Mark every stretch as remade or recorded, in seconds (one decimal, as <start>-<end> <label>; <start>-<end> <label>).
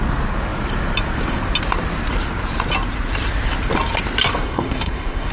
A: 0.0-4.3 recorded; 4.3-5.3 remade